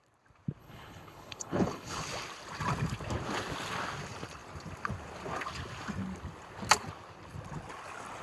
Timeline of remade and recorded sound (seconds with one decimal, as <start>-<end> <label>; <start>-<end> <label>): 0.0-0.6 recorded; 0.6-2.0 remade; 2.0-8.2 recorded